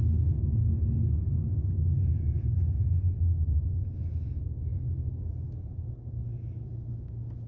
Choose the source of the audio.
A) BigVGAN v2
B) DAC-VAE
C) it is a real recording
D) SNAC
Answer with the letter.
B